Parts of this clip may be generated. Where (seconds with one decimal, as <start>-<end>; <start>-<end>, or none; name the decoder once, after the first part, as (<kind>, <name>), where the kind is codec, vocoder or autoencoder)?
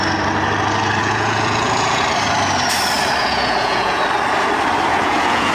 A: 1.0-2.0 (vocoder, Vocos); 3.2-4.0; 4.9-5.5